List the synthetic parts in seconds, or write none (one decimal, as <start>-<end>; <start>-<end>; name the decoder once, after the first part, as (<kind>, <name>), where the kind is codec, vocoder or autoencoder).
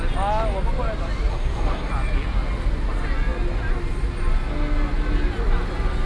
1.3-1.9 (codec, SNAC)